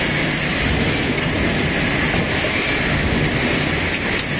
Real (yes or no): yes